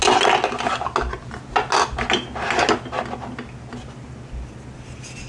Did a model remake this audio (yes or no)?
no